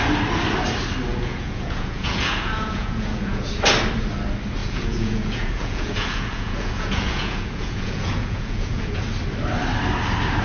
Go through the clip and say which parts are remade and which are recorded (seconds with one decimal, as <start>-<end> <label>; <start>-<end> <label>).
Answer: 0.0-1.1 recorded; 1.1-3.5 remade; 3.5-4.6 recorded; 4.6-9.0 remade; 9.0-10.4 recorded